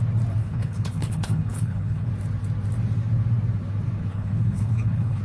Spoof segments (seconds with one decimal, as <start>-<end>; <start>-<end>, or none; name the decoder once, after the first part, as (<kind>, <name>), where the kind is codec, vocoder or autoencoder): 0.4-2.1 (codec, HILCodec); 4.1-5.2